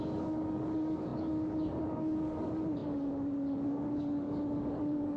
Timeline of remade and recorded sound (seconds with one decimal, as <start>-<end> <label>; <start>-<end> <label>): 0.0-5.2 remade